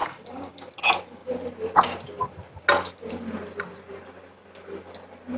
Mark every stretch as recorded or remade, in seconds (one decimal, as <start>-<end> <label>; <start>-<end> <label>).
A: 0.0-0.6 remade; 0.6-5.4 recorded